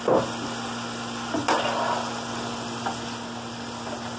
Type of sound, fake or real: real